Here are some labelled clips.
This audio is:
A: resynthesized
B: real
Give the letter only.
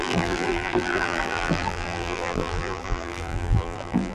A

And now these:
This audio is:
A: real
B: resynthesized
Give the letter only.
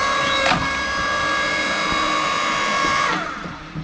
B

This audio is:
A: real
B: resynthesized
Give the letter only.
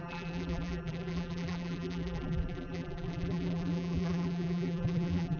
B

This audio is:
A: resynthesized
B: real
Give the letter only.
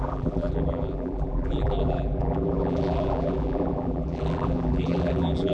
A